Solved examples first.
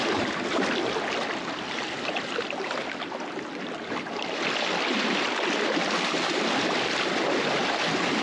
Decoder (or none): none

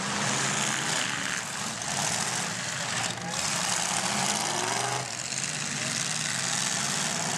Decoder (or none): none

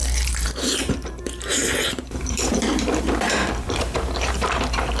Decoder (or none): vocoder, BigVGAN v2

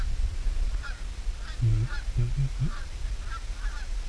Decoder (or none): none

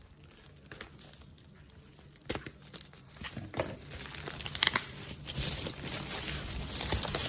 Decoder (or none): none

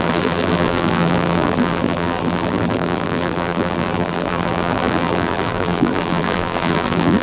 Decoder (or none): vocoder, BigVGAN v2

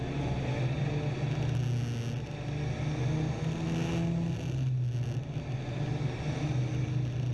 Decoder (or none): none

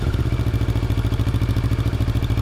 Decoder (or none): vocoder, BigVGAN v2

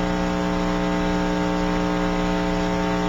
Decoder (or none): none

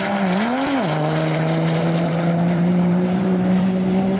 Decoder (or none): vocoder, BigVGAN v2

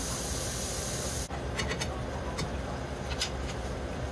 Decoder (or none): vocoder, BigVGAN v2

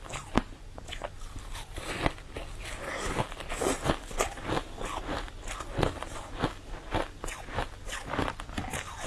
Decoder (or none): none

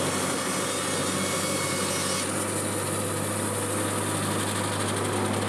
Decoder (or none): none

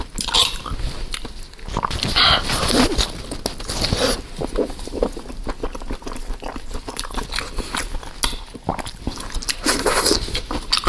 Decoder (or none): none